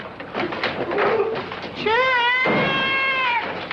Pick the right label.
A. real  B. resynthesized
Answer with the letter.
A